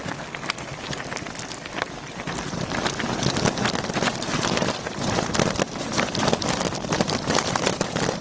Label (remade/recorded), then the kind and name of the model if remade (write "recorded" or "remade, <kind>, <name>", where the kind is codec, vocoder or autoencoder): remade, vocoder, BigVGAN v2